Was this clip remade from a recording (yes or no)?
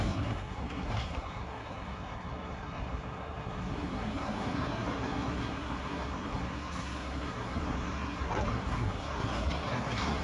yes